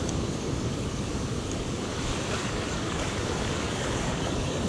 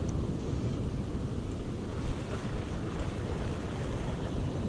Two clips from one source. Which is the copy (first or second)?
first